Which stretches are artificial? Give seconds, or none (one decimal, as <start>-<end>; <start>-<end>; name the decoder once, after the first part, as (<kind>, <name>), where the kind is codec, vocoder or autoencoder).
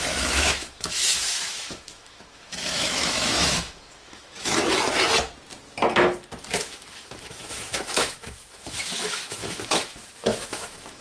0.0-4.6 (autoencoder, DAC-VAE); 6.5-11.0